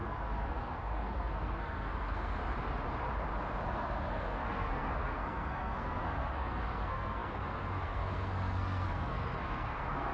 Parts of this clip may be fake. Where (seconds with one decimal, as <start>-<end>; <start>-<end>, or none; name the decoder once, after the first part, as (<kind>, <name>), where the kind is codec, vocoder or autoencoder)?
0.0-2.4 (codec, SNAC); 3.7-10.1